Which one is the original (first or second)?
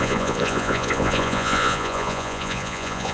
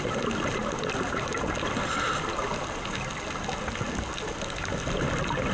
second